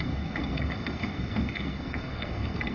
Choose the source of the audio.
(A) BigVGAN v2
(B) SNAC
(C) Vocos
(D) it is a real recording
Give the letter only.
B